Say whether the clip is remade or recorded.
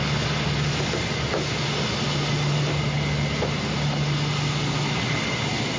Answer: recorded